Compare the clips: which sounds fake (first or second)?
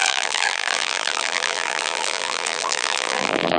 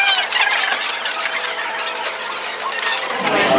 first